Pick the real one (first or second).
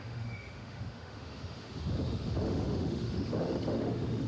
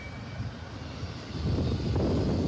second